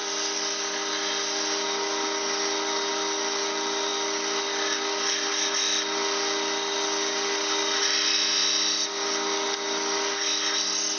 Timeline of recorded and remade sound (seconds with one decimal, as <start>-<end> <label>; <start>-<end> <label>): 0.0-11.0 recorded

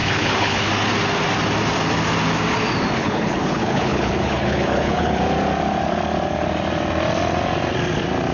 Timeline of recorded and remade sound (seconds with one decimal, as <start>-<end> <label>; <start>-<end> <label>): 0.0-0.7 remade; 0.7-3.0 recorded; 3.0-5.2 remade; 5.2-8.3 recorded